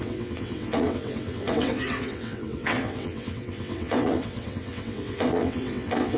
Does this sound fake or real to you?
fake